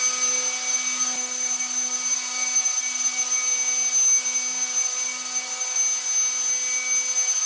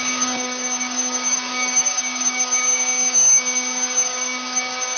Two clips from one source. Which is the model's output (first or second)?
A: second